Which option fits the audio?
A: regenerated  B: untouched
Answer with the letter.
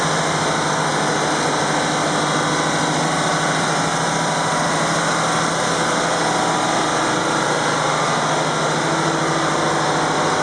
B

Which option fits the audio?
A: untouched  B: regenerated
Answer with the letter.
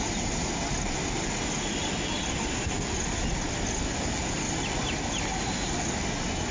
A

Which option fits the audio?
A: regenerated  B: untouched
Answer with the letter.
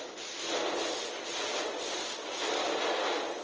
B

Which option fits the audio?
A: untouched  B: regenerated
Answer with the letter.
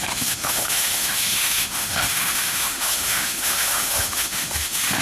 B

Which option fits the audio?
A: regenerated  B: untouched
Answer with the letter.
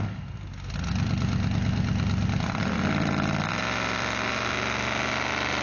B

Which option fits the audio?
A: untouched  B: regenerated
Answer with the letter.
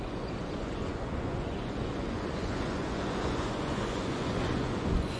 B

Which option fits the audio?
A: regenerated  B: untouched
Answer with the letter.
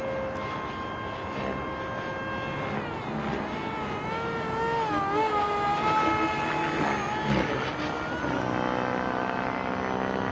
B